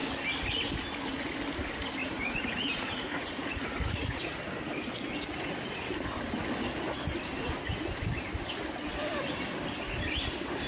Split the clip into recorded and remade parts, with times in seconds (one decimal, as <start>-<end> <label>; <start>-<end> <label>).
0.0-2.0 recorded; 2.0-4.3 remade; 4.3-10.7 recorded